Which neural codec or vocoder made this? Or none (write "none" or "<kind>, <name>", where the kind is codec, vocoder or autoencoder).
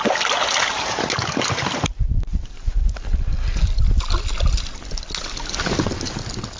none